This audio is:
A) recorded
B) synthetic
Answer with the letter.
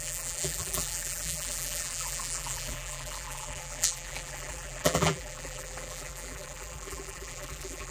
B